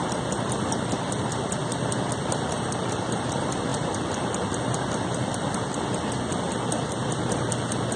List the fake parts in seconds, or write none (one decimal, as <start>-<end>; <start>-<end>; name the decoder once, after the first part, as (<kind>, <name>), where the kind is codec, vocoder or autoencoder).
none